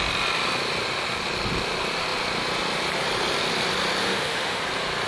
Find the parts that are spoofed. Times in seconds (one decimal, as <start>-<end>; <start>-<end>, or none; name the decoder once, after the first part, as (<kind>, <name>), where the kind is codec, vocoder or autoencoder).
4.0-4.6 (autoencoder, DAC-VAE)